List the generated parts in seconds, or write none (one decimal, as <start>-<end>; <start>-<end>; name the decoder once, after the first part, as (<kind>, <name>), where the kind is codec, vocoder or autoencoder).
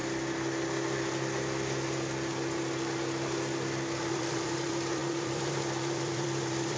4.1-6.8 (vocoder, BigVGAN v2)